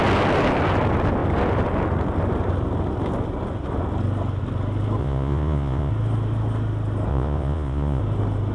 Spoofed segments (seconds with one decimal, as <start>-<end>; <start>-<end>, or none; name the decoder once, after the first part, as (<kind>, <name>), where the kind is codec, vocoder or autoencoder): 5.0-5.9 (vocoder, Vocos); 7.1-8.0